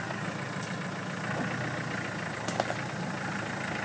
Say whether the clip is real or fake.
real